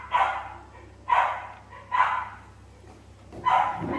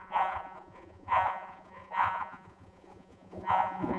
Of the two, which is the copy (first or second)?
second